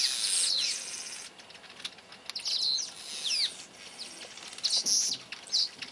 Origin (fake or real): real